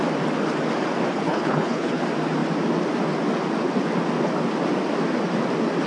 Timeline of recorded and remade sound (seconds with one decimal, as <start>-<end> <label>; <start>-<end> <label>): 0.0-1.1 recorded; 1.1-2.0 remade; 2.0-5.9 recorded